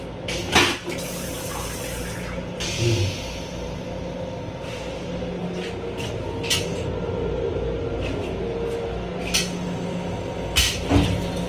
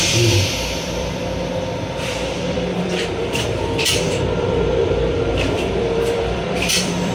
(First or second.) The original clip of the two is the first